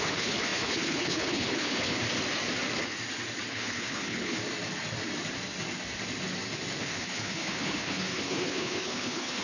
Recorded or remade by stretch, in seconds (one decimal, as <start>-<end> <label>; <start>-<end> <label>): 0.0-2.0 remade; 2.0-3.5 recorded; 3.5-4.4 remade; 4.4-6.8 recorded; 6.8-9.4 remade